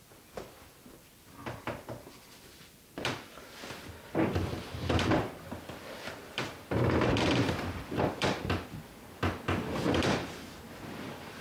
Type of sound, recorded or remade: remade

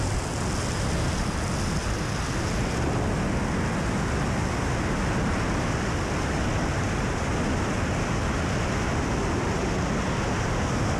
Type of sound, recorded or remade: recorded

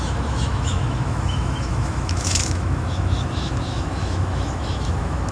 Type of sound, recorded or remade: remade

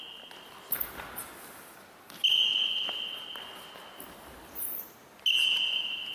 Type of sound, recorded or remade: recorded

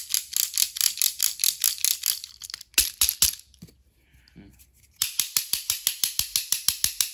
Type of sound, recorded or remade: recorded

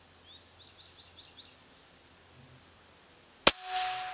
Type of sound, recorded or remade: recorded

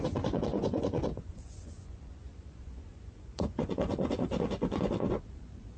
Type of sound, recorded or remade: remade